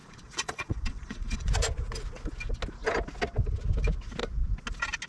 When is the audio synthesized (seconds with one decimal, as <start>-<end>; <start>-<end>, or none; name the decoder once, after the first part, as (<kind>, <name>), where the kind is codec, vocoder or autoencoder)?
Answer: 0.0-1.5 (vocoder, Vocos)